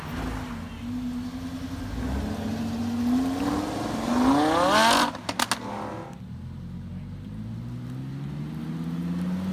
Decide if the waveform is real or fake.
real